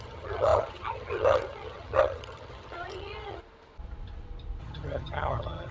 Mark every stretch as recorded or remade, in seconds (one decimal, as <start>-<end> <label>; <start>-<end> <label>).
0.0-3.4 remade; 3.4-4.6 recorded; 4.6-5.7 remade